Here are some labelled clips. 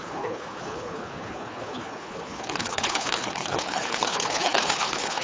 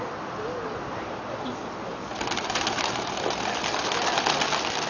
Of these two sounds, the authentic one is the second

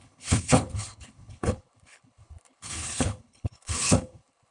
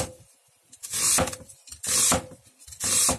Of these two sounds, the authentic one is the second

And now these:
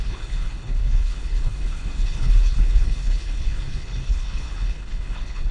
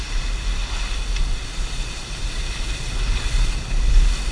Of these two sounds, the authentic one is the second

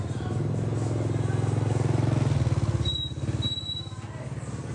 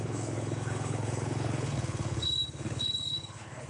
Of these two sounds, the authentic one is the first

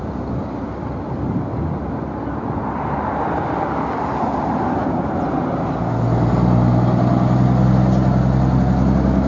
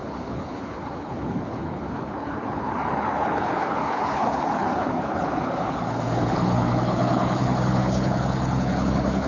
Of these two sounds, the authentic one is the first